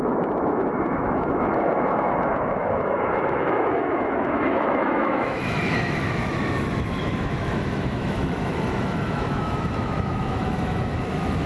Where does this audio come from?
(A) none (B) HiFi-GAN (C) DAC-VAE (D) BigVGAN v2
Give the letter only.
C